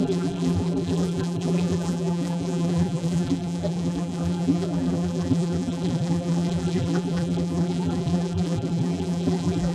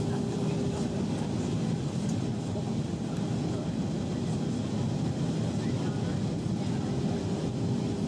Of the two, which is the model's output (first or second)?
first